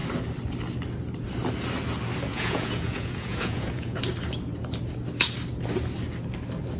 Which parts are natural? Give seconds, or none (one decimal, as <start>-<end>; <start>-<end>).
0.0-2.3; 4.0-6.8